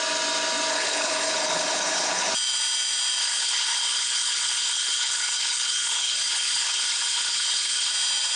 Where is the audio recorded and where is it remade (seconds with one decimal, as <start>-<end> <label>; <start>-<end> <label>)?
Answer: 0.0-0.7 recorded; 0.7-2.3 remade; 2.3-3.2 recorded; 3.2-7.9 remade; 7.9-8.4 recorded